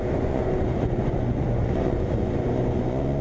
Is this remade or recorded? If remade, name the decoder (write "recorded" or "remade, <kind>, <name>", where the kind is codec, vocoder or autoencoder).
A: remade, vocoder, Vocos